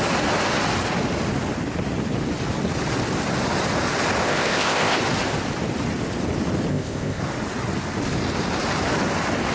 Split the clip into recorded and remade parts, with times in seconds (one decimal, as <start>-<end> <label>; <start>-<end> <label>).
0.0-4.2 recorded; 4.2-5.0 remade; 5.0-6.7 recorded; 6.7-7.2 remade; 7.2-9.5 recorded